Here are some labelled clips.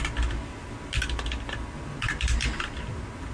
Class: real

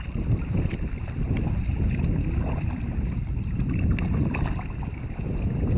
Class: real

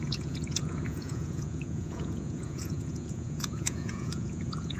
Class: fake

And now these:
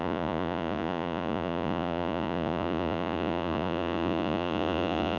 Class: fake